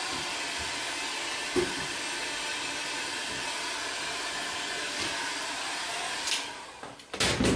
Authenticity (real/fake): real